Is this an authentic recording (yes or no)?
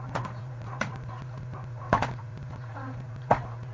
no